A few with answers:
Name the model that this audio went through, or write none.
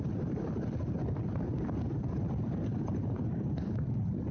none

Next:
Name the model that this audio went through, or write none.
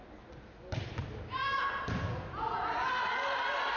none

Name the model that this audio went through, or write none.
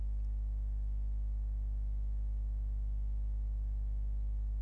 none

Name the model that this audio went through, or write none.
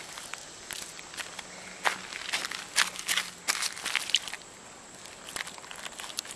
none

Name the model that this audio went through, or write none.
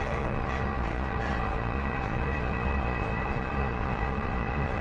vocoder, Vocos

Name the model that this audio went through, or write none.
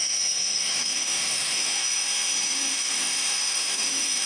autoencoder, DAC-VAE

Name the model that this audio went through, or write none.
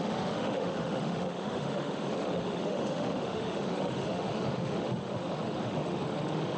autoencoder, DAC-VAE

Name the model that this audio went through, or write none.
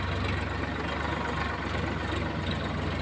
none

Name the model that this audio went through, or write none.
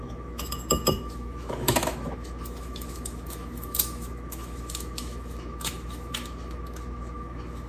autoencoder, DAC-VAE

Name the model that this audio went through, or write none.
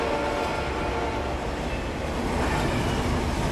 none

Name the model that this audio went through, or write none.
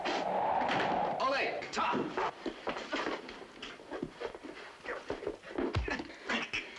none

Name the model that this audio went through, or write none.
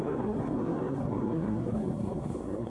codec, SNAC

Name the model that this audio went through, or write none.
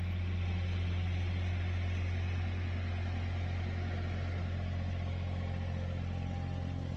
none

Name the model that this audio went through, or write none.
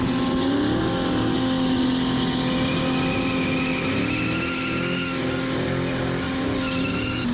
none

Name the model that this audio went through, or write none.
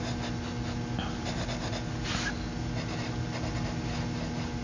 none